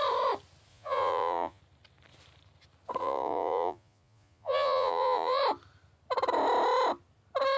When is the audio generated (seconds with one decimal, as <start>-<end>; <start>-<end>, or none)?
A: 0.7-1.6; 3.0-5.4